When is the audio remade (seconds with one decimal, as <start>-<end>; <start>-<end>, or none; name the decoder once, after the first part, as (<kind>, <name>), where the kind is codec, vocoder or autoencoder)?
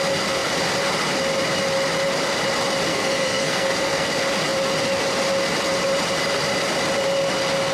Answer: 2.9-4.1 (codec, SNAC)